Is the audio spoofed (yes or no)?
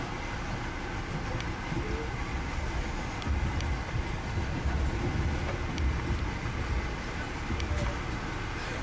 no